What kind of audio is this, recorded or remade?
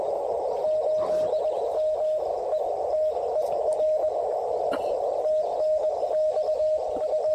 recorded